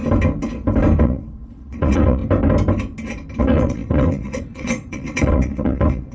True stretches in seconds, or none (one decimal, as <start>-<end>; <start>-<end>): 0.0-1.0; 2.2-3.4